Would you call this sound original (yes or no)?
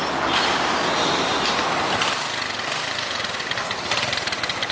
yes